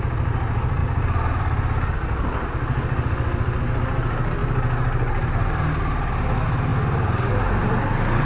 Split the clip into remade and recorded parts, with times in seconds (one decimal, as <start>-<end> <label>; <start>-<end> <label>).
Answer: 0.0-8.2 recorded